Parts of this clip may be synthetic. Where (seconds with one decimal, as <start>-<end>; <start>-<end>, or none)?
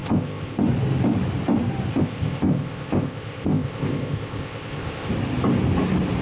0.0-0.6; 1.9-5.1